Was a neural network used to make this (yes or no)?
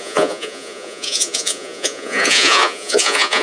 yes